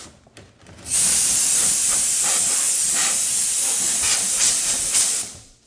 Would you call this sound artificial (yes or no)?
yes